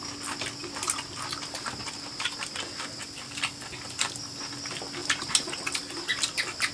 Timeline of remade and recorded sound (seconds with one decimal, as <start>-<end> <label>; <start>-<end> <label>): 0.0-5.0 recorded; 5.0-5.5 remade; 5.5-6.7 recorded